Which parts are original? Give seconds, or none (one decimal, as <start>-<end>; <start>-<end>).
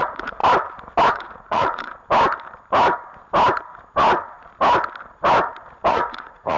0.4-1.1; 1.9-5.9